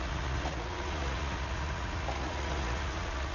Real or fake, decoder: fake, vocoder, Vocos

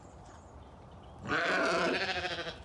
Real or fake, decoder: real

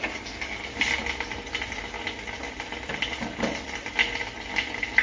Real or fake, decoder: real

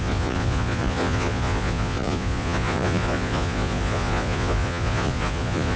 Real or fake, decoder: fake, vocoder, Vocos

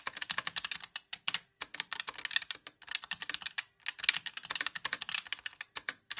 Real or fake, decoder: real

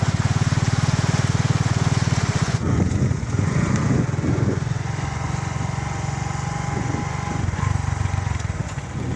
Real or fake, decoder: fake, vocoder, Vocos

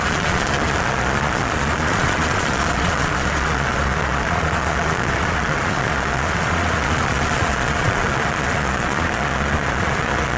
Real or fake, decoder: fake, vocoder, Vocos